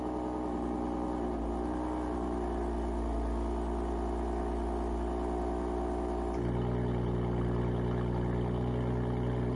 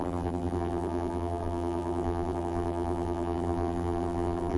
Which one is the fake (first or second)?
second